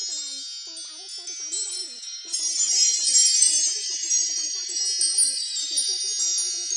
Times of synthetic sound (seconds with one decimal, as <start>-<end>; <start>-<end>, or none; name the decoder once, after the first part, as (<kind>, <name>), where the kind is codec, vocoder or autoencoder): 1.6-4.8 (vocoder, Vocos); 5.2-6.0